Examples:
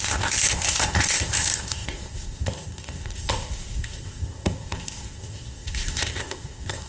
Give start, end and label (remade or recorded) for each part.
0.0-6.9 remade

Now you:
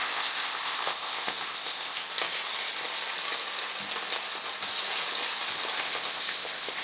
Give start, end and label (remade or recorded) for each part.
0.0-2.0 remade; 2.0-5.8 recorded; 5.8-6.8 remade

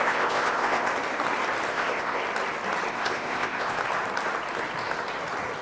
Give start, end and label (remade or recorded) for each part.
0.0-0.9 remade; 0.9-1.7 recorded; 1.7-2.2 remade; 2.2-2.9 recorded; 2.9-3.8 remade; 3.8-5.6 recorded

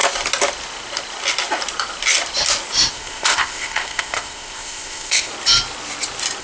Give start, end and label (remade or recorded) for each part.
0.0-2.9 recorded; 2.9-5.3 remade; 5.3-6.4 recorded

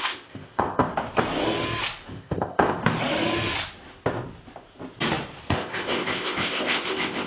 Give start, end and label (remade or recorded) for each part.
0.0-0.9 remade; 0.9-2.1 recorded; 2.1-2.8 remade; 2.8-5.5 recorded; 5.5-7.3 remade